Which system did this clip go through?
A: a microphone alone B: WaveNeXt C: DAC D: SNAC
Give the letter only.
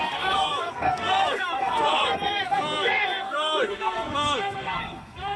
D